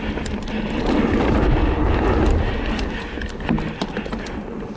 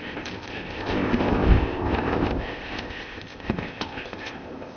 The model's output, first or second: second